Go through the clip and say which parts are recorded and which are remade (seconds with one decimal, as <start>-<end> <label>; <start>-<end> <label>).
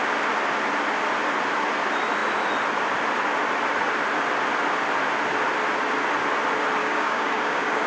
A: 0.0-6.8 recorded; 6.8-7.9 remade